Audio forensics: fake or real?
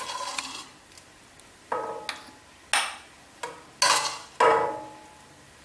real